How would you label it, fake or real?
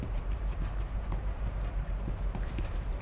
fake